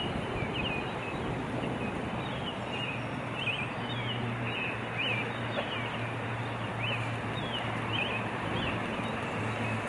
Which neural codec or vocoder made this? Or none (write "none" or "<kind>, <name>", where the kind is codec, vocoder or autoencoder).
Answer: none